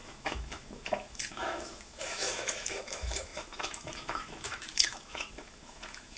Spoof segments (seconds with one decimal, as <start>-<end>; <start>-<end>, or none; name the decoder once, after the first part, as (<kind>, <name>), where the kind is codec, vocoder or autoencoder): 0.0-6.2 (autoencoder, DAC-VAE)